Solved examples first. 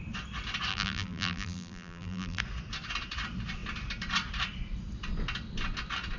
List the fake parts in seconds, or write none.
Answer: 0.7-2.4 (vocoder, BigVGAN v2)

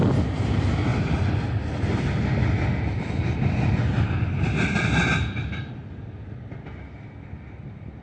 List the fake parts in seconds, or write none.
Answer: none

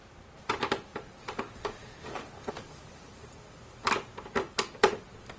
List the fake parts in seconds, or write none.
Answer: 0.0-5.4 (vocoder, BigVGAN v2)